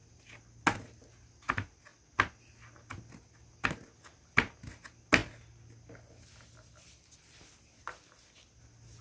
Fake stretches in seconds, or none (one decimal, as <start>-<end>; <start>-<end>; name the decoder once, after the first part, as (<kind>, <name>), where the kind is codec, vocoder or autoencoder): none